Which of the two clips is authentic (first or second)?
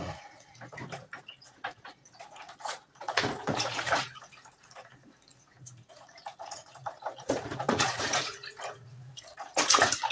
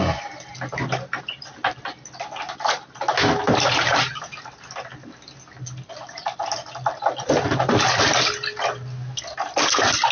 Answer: second